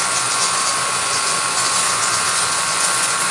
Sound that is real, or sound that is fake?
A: fake